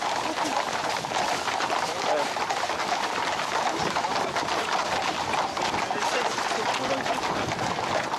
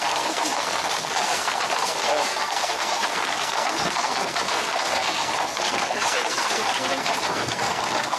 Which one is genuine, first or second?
first